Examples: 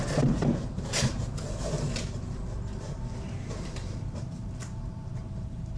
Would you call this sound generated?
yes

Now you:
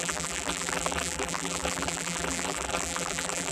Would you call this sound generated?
yes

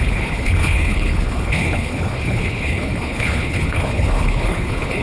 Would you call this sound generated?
yes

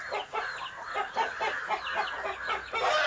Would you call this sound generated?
no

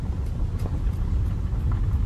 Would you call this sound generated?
no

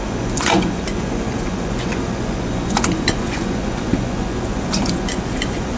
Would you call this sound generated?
yes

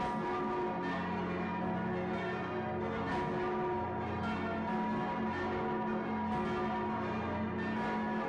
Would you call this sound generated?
no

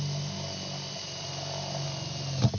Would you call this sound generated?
no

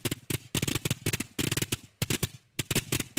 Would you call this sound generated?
no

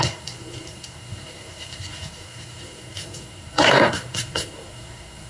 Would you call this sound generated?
yes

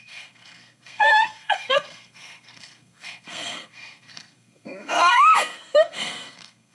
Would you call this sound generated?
yes